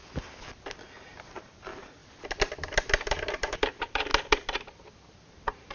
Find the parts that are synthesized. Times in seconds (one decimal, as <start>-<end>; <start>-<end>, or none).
1.0-2.0; 3.3-4.1